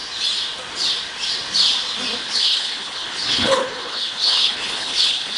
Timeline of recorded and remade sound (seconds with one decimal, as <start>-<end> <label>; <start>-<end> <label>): 0.0-2.2 recorded; 2.2-5.4 remade